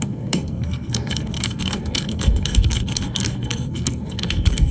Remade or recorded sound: remade